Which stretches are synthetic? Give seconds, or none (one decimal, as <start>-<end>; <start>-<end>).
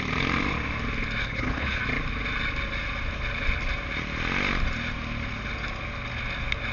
1.2-1.8